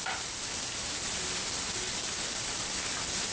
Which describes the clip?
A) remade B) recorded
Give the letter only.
B